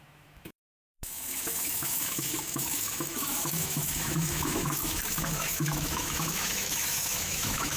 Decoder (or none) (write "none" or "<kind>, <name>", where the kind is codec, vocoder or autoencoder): autoencoder, DAC-VAE